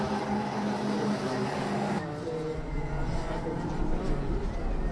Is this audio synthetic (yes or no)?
no